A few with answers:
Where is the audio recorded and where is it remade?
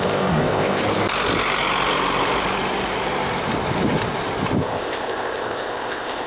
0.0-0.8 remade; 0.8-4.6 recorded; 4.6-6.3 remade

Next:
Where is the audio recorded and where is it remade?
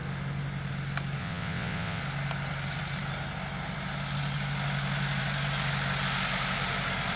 0.0-1.2 recorded; 1.2-2.0 remade; 2.0-7.2 recorded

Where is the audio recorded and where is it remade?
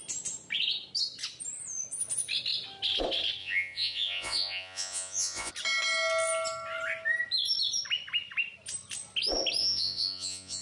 0.0-3.4 recorded; 3.4-5.5 remade; 5.5-9.6 recorded; 9.6-10.6 remade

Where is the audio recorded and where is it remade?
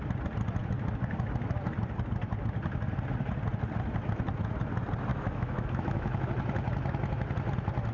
0.0-5.1 recorded; 5.1-6.3 remade; 6.3-7.9 recorded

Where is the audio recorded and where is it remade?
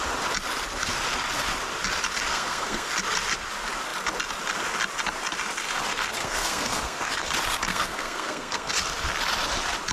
0.0-2.3 recorded; 2.3-2.9 remade; 2.9-6.2 recorded; 6.2-7.1 remade; 7.1-7.7 recorded; 7.7-8.7 remade; 8.7-9.9 recorded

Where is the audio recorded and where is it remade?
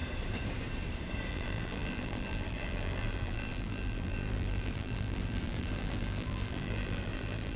0.0-1.3 recorded; 1.3-7.6 remade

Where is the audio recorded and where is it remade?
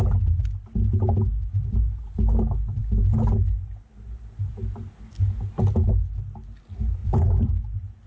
0.0-7.0 recorded; 7.0-7.5 remade; 7.5-8.1 recorded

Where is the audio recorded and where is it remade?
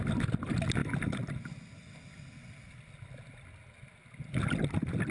0.0-5.1 recorded